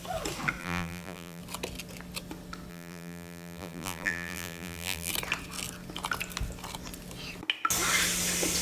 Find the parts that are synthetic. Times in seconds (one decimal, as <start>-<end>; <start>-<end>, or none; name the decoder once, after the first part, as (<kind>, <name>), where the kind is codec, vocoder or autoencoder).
0.6-1.4 (vocoder, BigVGAN v2); 2.7-5.1